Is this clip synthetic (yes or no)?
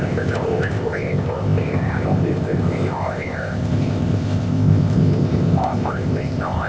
yes